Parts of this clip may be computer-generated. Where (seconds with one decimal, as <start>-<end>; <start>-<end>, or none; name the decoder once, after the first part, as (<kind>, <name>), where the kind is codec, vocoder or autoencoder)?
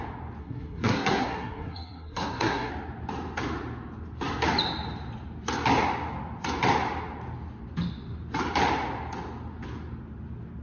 0.4-2.7 (codec, SNAC)